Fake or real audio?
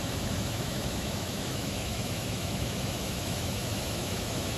fake